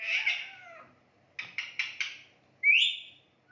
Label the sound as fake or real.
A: real